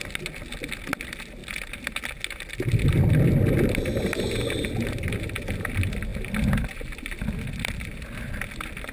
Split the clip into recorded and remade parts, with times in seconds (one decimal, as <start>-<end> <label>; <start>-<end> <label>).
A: 0.0-8.9 recorded